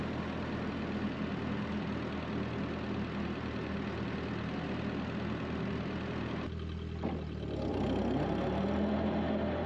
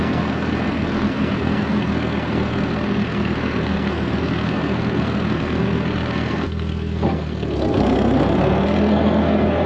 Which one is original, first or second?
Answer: first